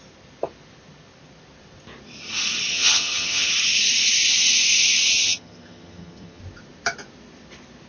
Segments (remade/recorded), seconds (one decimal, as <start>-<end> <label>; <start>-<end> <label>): 0.0-2.7 recorded; 2.7-3.5 remade; 3.5-5.1 recorded; 5.1-6.4 remade; 6.4-7.9 recorded